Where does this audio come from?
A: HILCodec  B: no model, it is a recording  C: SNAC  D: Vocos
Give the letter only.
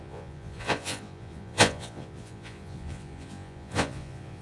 D